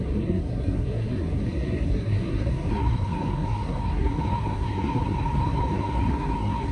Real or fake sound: fake